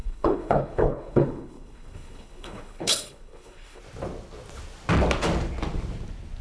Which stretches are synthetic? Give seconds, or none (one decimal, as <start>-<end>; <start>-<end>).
0.0-3.8